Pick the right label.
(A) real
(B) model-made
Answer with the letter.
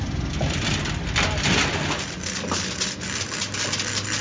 A